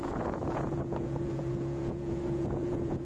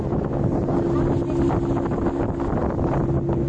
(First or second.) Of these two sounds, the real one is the second